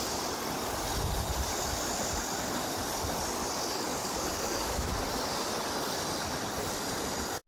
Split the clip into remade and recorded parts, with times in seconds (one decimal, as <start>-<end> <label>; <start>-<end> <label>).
0.0-3.9 recorded; 3.9-5.0 remade; 5.0-7.5 recorded